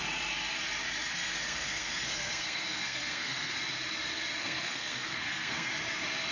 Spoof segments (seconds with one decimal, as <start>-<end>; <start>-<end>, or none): 1.1-3.5; 4.4-5.7